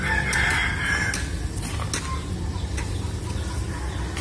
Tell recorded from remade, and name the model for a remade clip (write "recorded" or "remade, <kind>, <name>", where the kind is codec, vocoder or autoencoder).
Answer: recorded